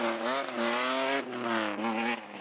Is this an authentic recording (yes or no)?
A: yes